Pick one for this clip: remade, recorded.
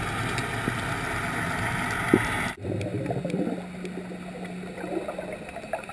recorded